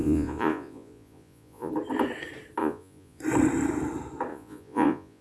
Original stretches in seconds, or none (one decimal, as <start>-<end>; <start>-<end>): 1.7-2.6; 3.2-4.3